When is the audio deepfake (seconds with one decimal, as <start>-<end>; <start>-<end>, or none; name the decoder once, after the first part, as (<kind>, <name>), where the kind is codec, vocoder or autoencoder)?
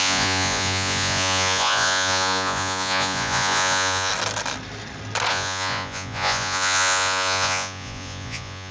0.0-4.1 (vocoder, Vocos); 5.3-8.7